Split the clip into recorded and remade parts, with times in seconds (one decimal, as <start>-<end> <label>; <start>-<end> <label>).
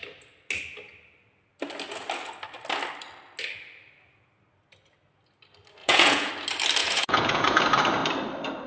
0.0-5.8 recorded; 5.8-6.3 remade; 6.3-6.8 recorded; 6.8-7.6 remade; 7.6-8.7 recorded